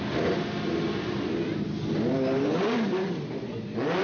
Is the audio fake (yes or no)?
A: no